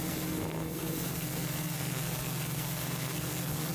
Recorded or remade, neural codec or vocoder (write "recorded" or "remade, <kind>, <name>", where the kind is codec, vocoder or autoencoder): remade, codec, SNAC